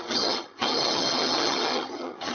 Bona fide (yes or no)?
no